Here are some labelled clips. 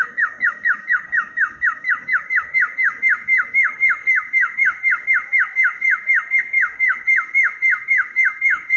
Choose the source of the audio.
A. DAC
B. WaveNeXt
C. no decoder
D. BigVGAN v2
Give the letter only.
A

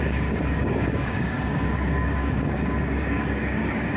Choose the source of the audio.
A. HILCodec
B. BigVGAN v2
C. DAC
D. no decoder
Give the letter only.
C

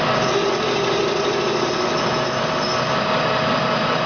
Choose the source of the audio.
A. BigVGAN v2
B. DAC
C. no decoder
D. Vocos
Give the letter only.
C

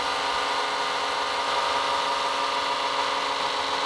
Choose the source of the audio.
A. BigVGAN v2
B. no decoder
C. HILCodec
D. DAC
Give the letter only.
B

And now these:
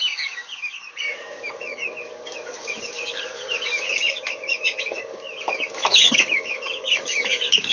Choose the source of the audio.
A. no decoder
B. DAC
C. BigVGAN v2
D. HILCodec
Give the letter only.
B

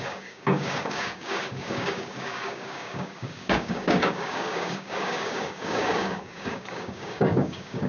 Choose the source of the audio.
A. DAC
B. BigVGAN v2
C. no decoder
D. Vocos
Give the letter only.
A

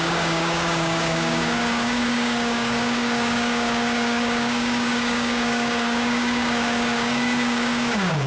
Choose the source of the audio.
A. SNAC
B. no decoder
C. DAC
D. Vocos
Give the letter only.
C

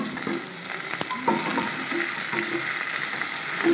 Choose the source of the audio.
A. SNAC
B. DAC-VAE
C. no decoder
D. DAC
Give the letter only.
C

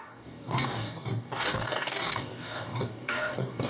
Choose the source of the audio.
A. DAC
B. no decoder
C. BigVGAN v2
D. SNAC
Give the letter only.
A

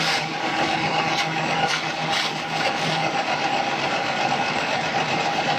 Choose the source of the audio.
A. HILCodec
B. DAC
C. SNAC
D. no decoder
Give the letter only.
B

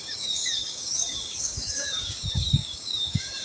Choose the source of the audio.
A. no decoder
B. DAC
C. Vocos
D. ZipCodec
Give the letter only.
B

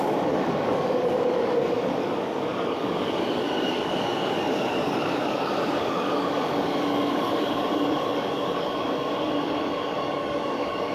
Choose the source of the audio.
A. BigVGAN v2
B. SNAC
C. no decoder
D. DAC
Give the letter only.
D